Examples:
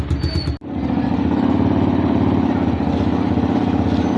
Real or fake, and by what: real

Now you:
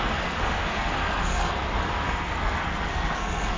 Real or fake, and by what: fake, codec, SNAC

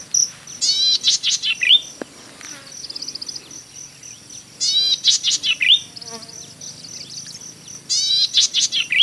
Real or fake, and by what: real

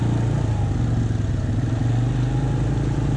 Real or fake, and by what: real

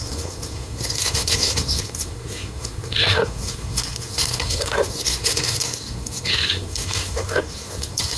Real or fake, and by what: fake, codec, SNAC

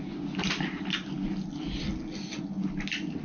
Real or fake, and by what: real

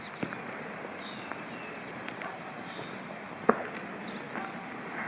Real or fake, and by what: real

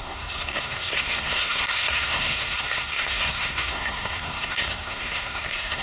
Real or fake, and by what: fake, codec, SNAC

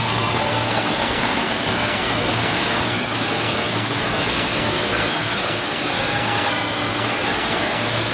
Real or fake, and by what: fake, codec, SNAC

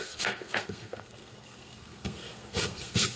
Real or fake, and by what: fake, codec, SNAC